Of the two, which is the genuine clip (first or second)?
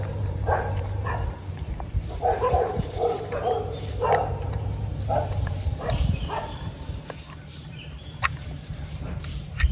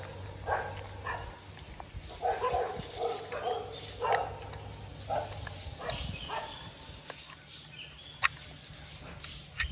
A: second